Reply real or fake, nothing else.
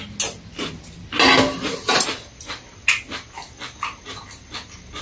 real